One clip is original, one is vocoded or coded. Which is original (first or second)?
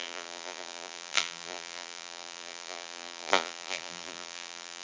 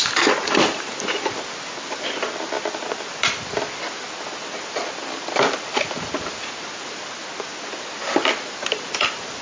second